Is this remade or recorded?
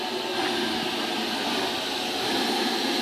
recorded